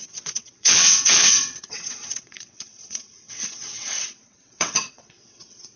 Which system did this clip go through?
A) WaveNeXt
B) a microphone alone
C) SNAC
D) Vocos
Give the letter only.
A